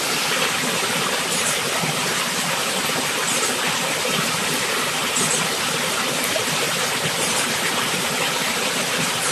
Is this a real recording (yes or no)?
yes